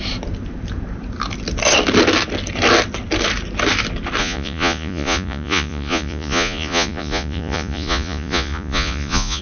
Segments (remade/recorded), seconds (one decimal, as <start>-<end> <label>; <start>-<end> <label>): 0.0-4.2 recorded; 4.2-9.4 remade